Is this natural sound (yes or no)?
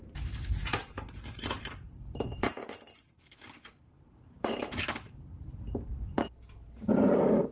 no